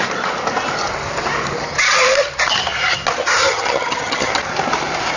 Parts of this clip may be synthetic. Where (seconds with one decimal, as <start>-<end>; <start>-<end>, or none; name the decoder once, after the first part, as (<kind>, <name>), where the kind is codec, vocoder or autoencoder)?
3.4-4.3 (vocoder, HiFi-GAN)